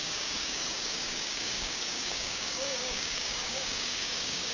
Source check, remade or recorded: remade